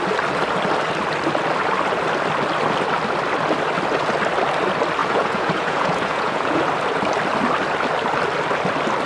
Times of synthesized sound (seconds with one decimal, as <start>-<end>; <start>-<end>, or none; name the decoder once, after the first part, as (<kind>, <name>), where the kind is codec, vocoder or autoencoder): 5.0-6.6 (vocoder, Vocos)